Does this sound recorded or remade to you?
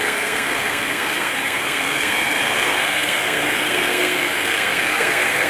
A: remade